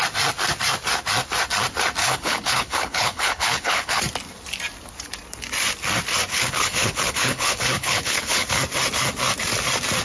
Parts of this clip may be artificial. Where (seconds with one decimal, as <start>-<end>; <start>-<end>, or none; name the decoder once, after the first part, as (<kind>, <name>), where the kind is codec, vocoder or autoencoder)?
2.0-4.0 (codec, HILCodec); 6.3-8.5